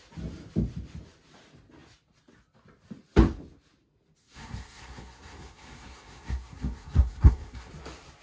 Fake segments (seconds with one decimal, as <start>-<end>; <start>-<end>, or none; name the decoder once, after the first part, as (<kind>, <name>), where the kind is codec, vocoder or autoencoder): 4.2-7.7 (codec, SNAC)